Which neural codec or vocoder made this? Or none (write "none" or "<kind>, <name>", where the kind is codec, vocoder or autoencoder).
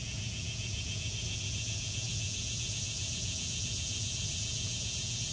vocoder, Vocos